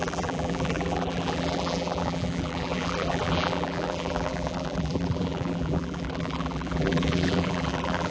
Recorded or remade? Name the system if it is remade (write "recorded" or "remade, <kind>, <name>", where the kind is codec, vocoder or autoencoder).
remade, vocoder, BigVGAN v2